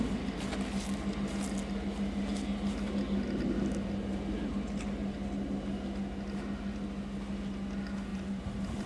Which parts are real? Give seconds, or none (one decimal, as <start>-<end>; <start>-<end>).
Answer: 0.0-8.1